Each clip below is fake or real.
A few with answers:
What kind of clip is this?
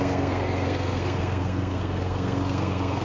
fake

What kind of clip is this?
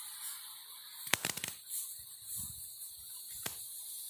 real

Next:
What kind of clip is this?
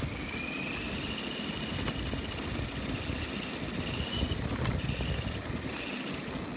real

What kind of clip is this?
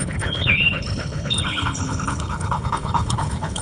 fake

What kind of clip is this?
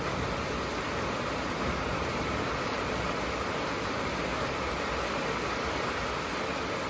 real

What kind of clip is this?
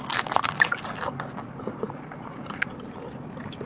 real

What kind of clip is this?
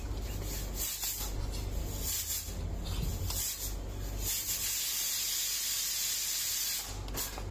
real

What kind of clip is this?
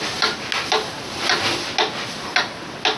real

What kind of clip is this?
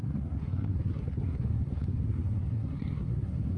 fake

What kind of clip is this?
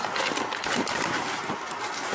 real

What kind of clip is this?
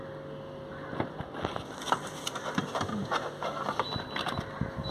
real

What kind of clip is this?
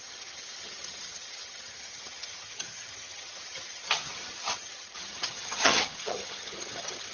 fake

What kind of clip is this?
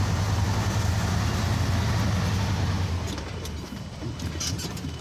real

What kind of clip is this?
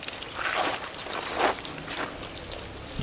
real